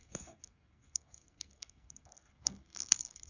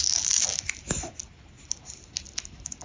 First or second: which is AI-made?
first